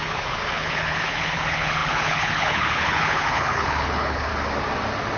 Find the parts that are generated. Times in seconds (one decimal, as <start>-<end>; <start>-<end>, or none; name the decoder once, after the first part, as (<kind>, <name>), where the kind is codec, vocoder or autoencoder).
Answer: 0.0-4.3 (codec, HILCodec)